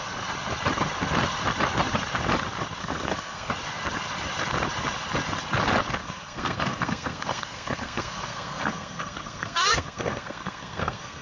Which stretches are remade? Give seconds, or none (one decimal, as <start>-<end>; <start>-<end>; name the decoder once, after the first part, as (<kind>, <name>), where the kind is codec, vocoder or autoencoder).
2.8-3.5 (codec, SNAC); 6.0-11.2